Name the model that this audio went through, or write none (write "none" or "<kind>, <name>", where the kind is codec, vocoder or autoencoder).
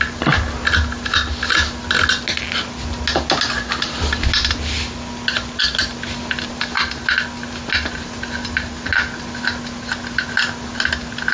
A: none